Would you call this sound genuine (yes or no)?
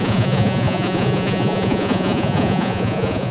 no